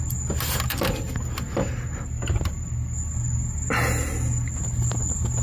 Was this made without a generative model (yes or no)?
yes